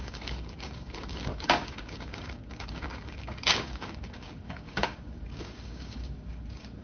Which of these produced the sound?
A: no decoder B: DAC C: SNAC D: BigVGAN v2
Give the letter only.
B